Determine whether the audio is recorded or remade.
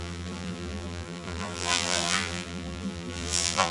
remade